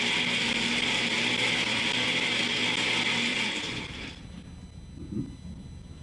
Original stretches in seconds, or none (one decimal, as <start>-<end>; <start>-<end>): 0.0-3.3; 3.8-6.0